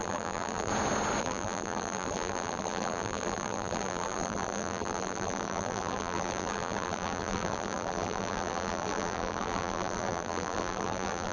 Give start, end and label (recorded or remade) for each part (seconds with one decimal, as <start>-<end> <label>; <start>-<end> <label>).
0.0-0.7 remade; 0.7-1.2 recorded; 1.2-11.3 remade